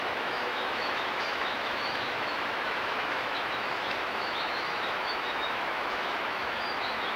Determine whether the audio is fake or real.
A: fake